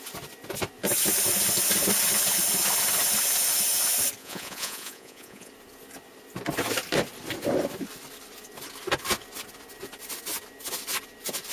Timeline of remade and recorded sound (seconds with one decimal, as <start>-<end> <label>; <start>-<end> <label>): 0.0-4.2 recorded; 4.2-5.5 remade; 5.5-11.5 recorded